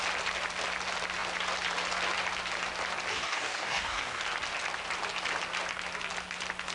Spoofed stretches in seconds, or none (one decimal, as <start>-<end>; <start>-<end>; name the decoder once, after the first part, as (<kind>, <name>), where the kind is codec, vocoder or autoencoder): 3.1-4.2 (codec, DAC)